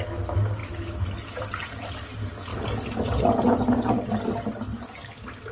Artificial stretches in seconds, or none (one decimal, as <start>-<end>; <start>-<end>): none